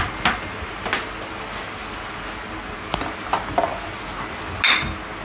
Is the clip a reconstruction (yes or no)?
no